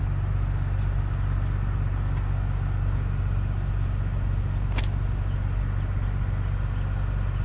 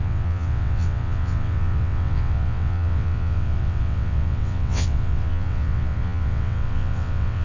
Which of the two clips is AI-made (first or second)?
second